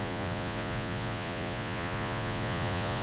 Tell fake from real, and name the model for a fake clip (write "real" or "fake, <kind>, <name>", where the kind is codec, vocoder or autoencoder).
fake, vocoder, Vocos